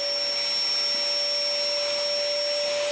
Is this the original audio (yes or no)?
yes